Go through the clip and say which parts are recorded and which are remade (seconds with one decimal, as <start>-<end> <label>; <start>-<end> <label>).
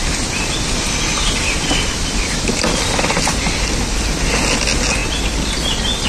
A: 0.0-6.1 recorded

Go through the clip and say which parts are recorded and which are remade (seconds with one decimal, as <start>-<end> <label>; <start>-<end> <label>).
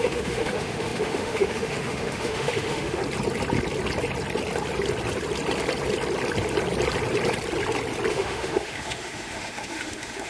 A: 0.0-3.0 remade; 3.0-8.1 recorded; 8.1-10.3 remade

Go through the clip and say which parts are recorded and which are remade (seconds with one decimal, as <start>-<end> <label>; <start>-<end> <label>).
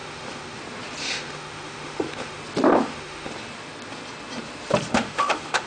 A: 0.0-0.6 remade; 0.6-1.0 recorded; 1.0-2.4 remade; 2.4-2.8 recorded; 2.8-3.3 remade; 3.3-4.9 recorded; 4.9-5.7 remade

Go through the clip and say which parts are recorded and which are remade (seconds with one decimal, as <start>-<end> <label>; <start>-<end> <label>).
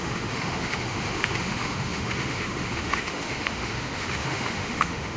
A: 0.0-5.2 remade